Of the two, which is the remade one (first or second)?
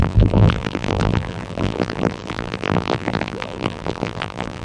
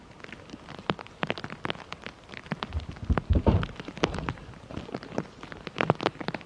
first